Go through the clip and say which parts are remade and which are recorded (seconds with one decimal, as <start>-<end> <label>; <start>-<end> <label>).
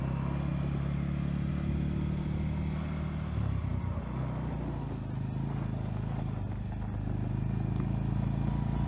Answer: 0.0-8.9 recorded